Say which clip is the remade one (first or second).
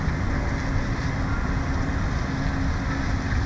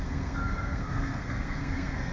second